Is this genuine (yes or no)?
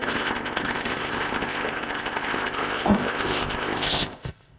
no